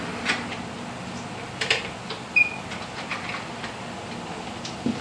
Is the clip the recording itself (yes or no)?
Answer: yes